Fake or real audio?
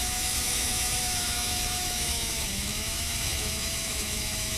fake